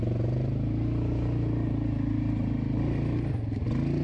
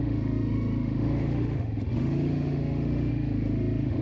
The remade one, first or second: second